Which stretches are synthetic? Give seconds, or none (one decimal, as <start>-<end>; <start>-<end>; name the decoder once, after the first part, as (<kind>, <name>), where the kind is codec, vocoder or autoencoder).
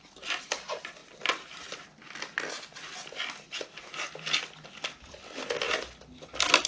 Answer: none